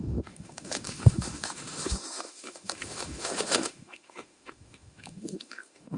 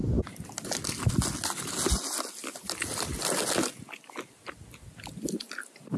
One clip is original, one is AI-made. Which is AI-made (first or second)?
first